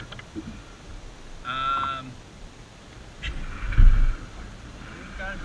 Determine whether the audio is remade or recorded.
recorded